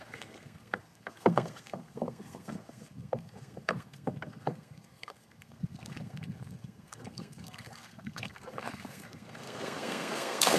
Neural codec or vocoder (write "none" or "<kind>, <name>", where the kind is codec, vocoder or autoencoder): codec, SNAC